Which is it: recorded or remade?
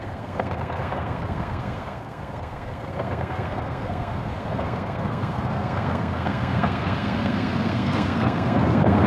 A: remade